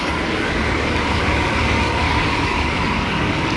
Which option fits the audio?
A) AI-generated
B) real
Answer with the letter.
A